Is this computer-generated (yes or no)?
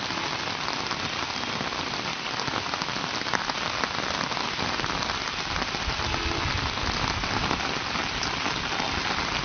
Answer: no